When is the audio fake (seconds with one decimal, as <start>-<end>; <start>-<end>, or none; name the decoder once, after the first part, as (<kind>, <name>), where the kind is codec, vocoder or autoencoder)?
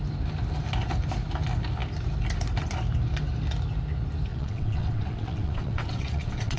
4.3-6.6 (vocoder, WaveNeXt)